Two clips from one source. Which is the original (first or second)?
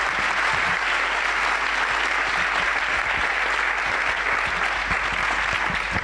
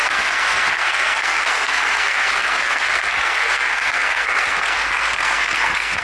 first